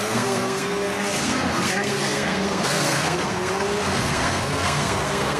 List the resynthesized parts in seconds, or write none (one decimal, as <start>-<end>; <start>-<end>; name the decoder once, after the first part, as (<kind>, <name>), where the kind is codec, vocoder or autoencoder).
0.0-5.4 (codec, SNAC)